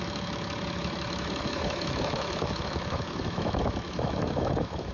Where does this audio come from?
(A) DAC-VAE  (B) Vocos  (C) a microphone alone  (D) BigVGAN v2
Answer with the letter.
A